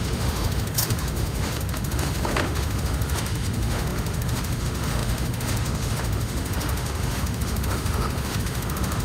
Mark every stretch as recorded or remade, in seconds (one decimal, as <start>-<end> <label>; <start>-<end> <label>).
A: 0.0-9.0 remade